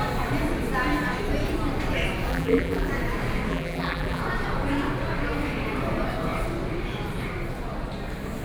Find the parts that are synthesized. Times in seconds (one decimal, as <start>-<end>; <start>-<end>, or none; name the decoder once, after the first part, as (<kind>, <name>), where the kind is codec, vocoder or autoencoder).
2.3-2.9 (vocoder, BigVGAN v2); 3.5-4.2